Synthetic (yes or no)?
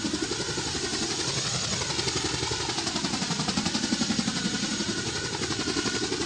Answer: no